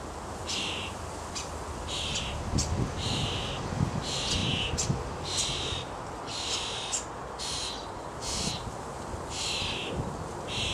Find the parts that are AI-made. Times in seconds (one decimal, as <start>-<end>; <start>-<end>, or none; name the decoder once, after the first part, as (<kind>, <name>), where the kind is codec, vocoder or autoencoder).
none